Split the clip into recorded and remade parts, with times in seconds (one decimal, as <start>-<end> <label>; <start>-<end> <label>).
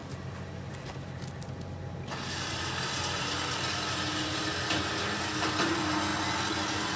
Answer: 0.0-7.0 recorded